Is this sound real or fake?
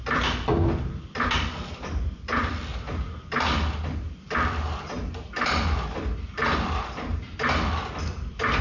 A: real